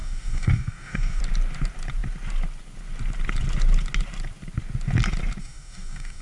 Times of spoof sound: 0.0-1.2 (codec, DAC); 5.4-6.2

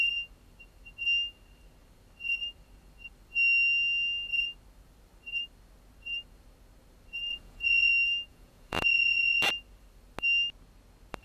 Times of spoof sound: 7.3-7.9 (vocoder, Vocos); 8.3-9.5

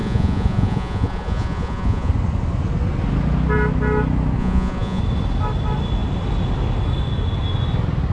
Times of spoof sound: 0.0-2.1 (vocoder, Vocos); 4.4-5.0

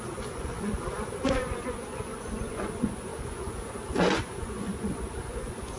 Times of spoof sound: 0.0-5.8 (vocoder, Vocos)

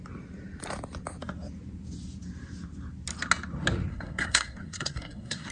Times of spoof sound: 3.9-5.5 (codec, SNAC)

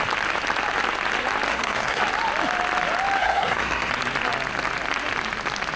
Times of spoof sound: 1.5-2.0 (codec, SNAC); 3.2-3.9

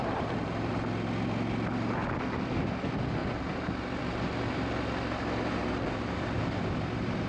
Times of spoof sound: 0.0-0.7 (vocoder, BigVGAN v2); 3.2-4.0; 5.6-6.4

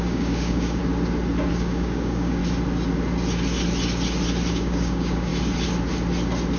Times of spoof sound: 0.0-0.8 (codec, DAC); 1.5-2.4; 4.5-5.3